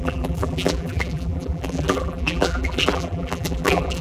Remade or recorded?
remade